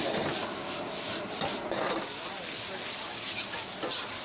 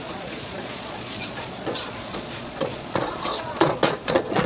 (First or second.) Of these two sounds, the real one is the first